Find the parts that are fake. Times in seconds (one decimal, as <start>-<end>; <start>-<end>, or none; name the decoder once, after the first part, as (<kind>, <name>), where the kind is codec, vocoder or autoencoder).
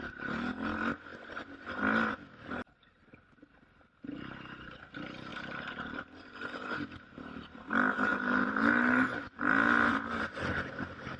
5.3-7.7 (vocoder, BigVGAN v2); 8.1-9.9